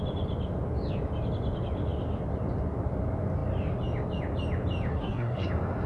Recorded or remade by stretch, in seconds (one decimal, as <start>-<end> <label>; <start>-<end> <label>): 0.0-4.9 recorded; 4.9-5.5 remade; 5.5-5.9 recorded